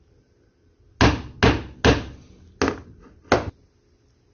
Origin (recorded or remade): recorded